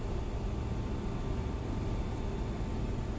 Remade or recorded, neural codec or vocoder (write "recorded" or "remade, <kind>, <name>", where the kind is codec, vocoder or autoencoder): recorded